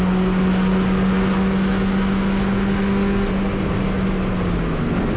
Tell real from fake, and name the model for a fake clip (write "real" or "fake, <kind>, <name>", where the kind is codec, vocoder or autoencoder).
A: real